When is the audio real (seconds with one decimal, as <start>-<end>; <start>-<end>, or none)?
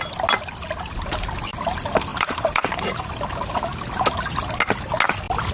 0.0-2.1; 3.1-5.5